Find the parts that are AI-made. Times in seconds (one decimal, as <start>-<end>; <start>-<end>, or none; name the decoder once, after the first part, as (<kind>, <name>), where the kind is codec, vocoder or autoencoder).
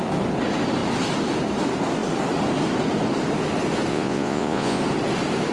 3.9-4.8 (vocoder, Vocos)